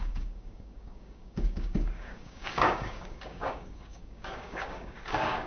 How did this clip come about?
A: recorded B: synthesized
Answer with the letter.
B